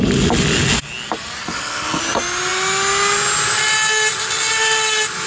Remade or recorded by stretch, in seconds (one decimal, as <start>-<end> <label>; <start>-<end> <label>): 0.0-1.4 recorded; 1.4-2.0 remade; 2.0-5.3 recorded

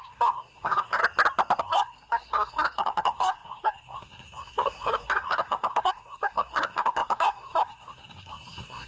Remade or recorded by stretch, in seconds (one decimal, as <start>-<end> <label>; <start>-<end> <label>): 0.0-1.0 remade; 1.0-1.6 recorded; 1.6-8.9 remade

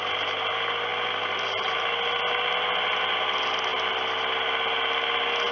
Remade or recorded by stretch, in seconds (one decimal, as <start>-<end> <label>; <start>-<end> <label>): 0.0-5.5 recorded

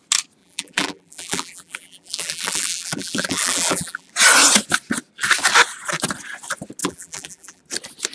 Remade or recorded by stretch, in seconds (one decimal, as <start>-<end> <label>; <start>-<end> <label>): 0.0-0.4 recorded; 0.4-4.1 remade; 4.1-6.8 recorded; 6.8-7.6 remade; 7.6-8.1 recorded

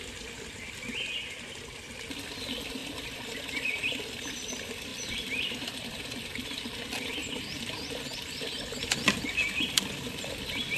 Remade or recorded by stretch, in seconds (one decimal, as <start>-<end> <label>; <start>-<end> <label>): 0.0-2.8 recorded; 2.8-4.1 remade; 4.1-10.8 recorded

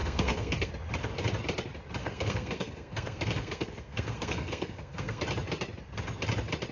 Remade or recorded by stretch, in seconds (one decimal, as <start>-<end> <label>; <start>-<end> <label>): 0.0-0.7 remade; 0.7-2.0 recorded; 2.0-5.2 remade; 5.2-6.7 recorded